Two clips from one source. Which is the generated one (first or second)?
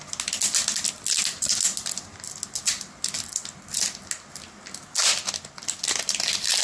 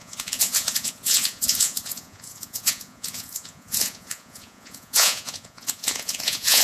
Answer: second